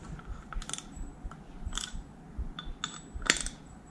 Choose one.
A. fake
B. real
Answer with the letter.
B